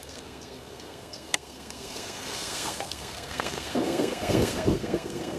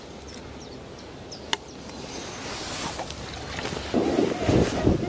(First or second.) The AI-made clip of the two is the first